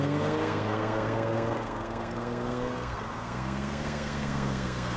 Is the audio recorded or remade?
remade